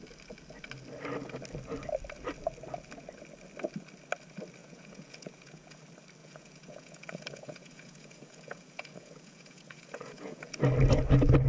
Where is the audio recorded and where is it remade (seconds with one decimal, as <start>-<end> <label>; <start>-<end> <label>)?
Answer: 0.0-4.6 recorded; 4.6-5.8 remade; 5.8-6.2 recorded; 6.2-10.6 remade; 10.6-11.5 recorded